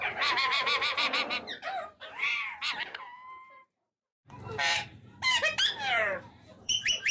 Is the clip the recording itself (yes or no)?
no